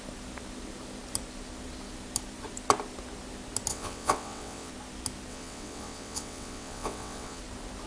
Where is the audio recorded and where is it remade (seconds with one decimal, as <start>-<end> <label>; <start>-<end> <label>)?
0.0-3.7 recorded; 3.7-4.7 remade; 4.7-5.3 recorded; 5.3-7.4 remade; 7.4-7.9 recorded